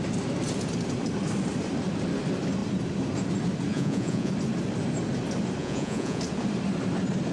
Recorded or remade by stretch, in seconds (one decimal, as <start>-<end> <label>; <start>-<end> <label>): 0.0-3.7 recorded; 3.7-4.3 remade; 4.3-5.6 recorded; 5.6-6.2 remade; 6.2-7.3 recorded